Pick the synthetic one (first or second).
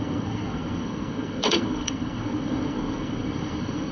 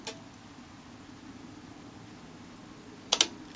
first